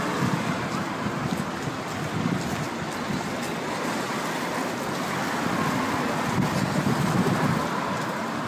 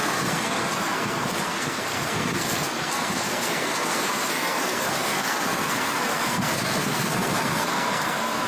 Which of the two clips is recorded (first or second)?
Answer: first